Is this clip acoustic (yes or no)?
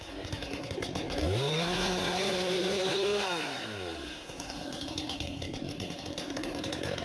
no